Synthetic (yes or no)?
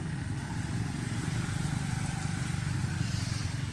no